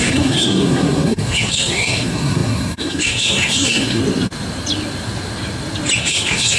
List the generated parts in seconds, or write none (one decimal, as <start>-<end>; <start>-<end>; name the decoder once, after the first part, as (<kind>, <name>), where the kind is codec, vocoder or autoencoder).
0.0-4.0 (codec, SNAC); 6.0-6.6